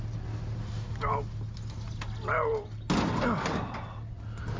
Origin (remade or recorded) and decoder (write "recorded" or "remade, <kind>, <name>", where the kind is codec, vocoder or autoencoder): recorded